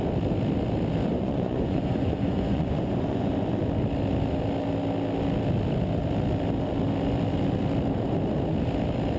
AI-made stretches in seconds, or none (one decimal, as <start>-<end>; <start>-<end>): 1.1-3.3